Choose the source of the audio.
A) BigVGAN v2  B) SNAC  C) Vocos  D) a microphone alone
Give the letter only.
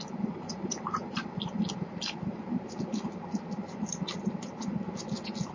D